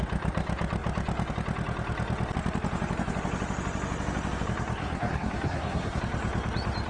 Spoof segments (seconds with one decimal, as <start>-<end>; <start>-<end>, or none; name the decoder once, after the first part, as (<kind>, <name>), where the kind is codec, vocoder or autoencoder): 4.8-6.0 (codec, SNAC)